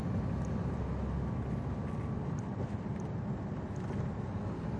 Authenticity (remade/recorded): recorded